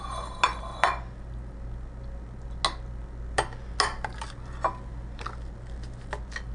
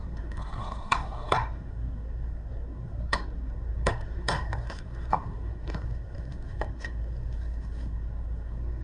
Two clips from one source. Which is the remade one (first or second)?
second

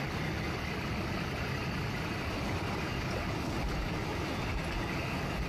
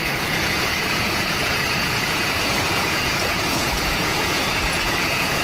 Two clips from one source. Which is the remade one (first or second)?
second